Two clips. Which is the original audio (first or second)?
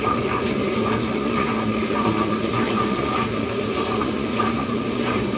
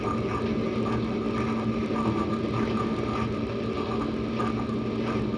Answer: second